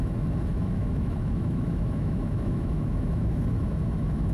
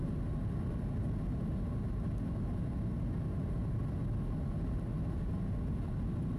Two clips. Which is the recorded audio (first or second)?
second